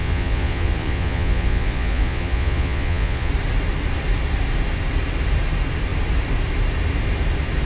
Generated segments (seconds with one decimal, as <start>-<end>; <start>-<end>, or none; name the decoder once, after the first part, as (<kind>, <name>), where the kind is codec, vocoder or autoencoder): 0.0-3.3 (vocoder, Vocos)